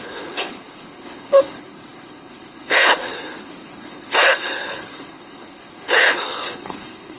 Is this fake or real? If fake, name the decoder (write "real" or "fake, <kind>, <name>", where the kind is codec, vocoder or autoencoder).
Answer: fake, codec, HILCodec